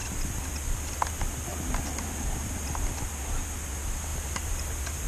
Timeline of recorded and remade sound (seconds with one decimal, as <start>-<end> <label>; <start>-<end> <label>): 0.0-3.1 remade; 3.1-4.1 recorded; 4.1-5.1 remade